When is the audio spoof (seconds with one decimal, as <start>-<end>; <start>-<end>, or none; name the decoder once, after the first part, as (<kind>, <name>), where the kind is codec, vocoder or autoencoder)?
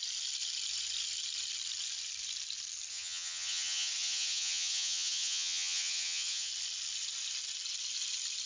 2.9-6.5 (vocoder, HiFi-GAN)